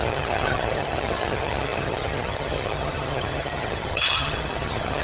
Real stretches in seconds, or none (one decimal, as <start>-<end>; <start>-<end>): none